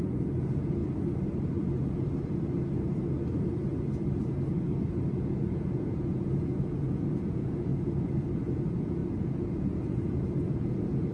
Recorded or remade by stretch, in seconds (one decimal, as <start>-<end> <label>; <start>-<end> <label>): 0.0-0.8 remade; 0.8-5.1 recorded; 5.1-7.7 remade; 7.7-8.5 recorded; 8.5-11.1 remade